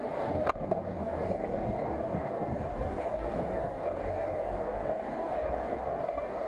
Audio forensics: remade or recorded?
remade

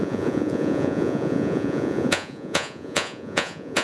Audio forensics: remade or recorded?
remade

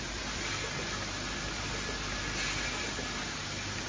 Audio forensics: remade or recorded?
recorded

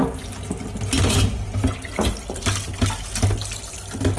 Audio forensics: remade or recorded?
recorded